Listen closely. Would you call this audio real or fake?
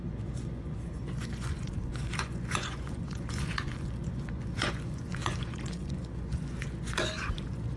fake